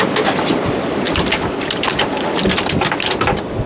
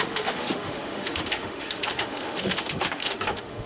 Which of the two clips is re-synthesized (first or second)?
second